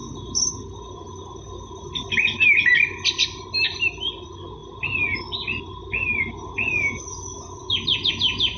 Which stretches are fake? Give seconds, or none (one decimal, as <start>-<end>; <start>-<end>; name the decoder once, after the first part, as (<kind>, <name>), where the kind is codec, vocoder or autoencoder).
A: none